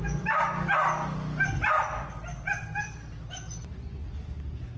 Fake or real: real